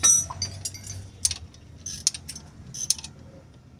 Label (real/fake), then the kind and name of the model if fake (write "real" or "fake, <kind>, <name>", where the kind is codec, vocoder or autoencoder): real